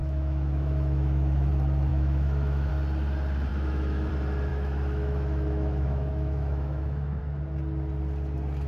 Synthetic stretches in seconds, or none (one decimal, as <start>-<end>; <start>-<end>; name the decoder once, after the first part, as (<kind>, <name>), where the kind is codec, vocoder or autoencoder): 0.0-1.5 (autoencoder, DAC-VAE); 1.9-2.7; 3.5-4.1; 4.5-7.2